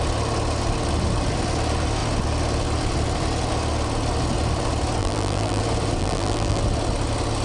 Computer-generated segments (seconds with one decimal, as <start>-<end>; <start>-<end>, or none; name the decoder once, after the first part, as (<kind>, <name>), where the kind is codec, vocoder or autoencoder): 5.0-5.6 (vocoder, BigVGAN v2); 6.0-6.6